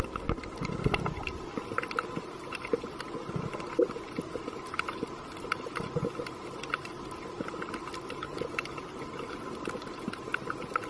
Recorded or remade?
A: recorded